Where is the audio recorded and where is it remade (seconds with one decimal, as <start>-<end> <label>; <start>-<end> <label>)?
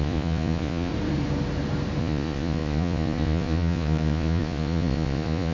0.0-0.9 remade; 0.9-2.0 recorded; 2.0-5.5 remade